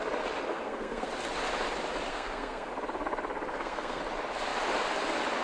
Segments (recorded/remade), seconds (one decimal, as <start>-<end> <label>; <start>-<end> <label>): 0.0-0.5 recorded; 0.5-1.1 remade; 1.1-2.1 recorded; 2.1-2.7 remade; 2.7-3.5 recorded; 3.5-4.0 remade; 4.0-5.4 recorded